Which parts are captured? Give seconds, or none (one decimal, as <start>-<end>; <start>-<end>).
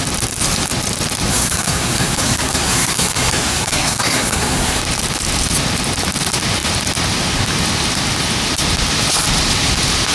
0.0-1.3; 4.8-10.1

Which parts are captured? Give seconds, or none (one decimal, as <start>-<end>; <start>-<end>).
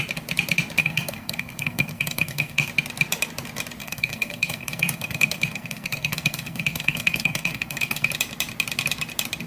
0.0-0.8; 2.7-3.8; 8.1-9.5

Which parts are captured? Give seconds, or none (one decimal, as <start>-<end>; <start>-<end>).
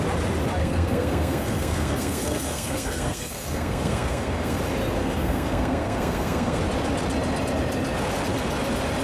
0.0-0.6; 4.6-5.0; 6.6-9.0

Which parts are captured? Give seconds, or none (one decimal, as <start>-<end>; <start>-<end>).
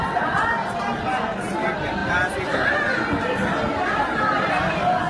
0.0-5.1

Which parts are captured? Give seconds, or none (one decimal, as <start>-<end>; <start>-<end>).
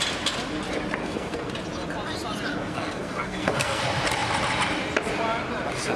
0.0-1.0; 1.5-2.5; 3.8-6.0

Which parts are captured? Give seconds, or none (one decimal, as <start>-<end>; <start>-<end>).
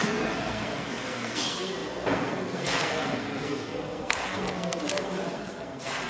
none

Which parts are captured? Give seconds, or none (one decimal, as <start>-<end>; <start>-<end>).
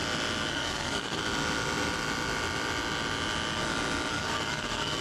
0.0-0.5; 1.2-4.1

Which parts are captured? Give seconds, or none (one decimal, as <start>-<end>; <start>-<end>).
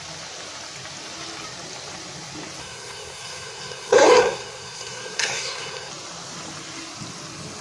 0.0-2.6; 5.9-7.6